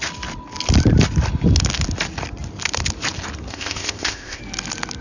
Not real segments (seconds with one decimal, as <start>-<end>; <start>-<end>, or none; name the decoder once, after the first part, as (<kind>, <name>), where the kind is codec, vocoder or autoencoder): 3.5-4.4 (codec, ZipCodec)